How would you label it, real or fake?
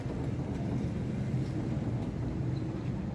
real